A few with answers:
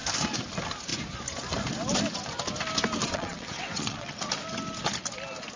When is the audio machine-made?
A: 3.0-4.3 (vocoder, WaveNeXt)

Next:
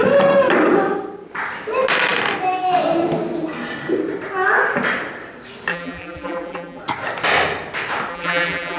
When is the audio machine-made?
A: 5.7-6.8 (vocoder, BigVGAN v2); 8.1-8.8

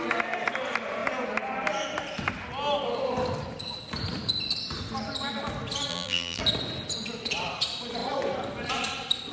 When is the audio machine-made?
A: 5.9-6.4 (vocoder, BigVGAN v2)

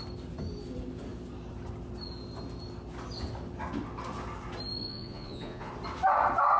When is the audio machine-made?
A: 4.8-5.7 (vocoder, Vocos)